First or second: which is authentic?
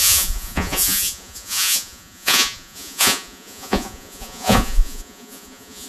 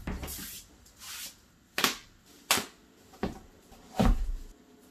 second